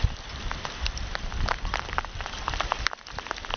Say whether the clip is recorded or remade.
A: recorded